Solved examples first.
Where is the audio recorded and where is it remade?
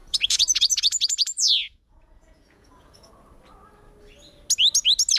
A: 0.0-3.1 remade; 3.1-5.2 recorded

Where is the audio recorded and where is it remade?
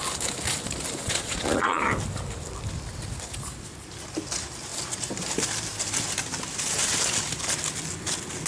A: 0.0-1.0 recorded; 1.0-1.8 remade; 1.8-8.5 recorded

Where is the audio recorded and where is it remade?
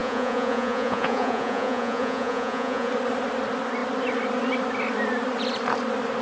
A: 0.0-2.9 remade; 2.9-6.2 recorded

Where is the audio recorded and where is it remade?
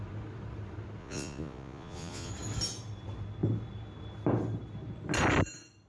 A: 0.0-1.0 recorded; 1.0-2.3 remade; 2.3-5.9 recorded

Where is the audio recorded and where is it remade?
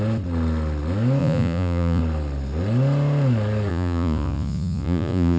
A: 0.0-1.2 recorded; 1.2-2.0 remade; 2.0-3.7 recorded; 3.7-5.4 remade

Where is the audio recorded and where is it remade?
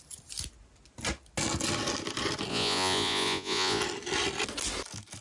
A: 0.0-2.5 recorded; 2.5-3.8 remade; 3.8-5.2 recorded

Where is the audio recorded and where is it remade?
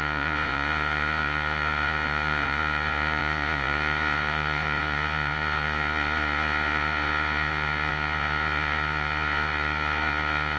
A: 0.0-10.6 remade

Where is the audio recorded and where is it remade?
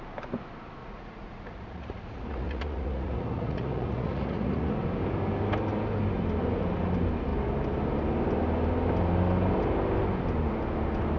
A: 0.0-0.8 recorded; 0.8-4.7 remade; 4.7-11.2 recorded